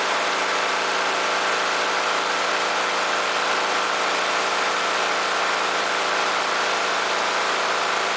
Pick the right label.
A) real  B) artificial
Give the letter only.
A